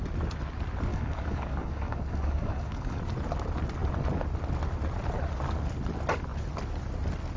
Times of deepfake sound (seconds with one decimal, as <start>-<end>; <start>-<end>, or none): 0.9-3.0